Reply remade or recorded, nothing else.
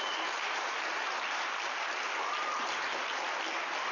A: recorded